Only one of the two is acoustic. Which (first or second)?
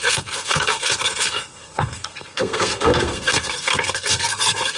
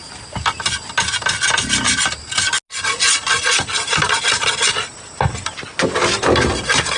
second